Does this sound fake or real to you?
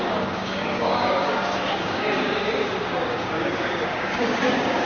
fake